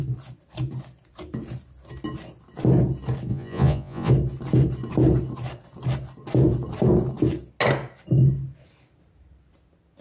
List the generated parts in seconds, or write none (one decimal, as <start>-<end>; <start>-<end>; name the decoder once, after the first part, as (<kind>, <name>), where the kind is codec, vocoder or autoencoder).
3.3-4.1 (vocoder, Vocos)